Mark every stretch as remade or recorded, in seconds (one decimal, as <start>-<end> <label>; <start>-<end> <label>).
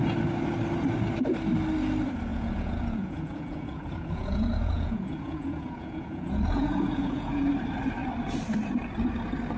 0.0-2.3 recorded; 2.3-7.5 remade; 7.5-9.6 recorded